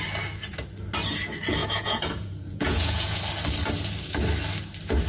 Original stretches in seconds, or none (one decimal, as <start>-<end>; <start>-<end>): 0.0-1.6; 3.2-5.1